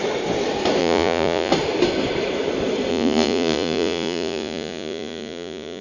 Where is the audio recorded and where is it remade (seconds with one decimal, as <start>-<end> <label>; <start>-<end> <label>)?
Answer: 0.0-0.8 recorded; 0.8-1.5 remade; 1.5-2.9 recorded; 2.9-5.8 remade